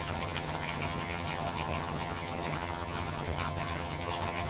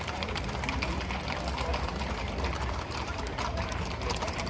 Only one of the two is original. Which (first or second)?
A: second